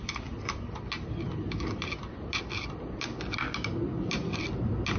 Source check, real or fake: real